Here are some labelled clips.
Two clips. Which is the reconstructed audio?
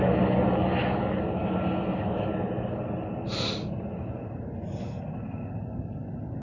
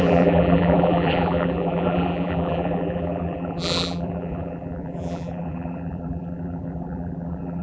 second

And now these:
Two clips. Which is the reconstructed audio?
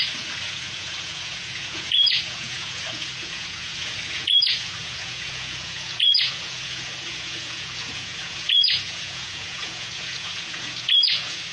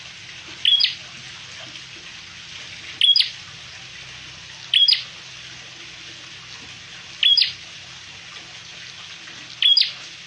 first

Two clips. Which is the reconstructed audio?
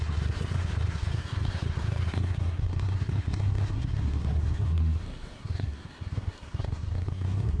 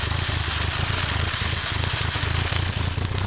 first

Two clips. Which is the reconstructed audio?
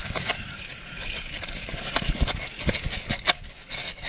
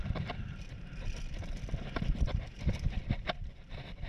first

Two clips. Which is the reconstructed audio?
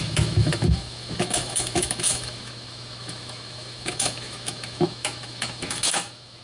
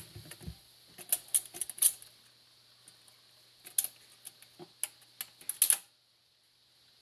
first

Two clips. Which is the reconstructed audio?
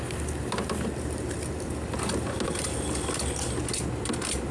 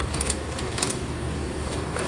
second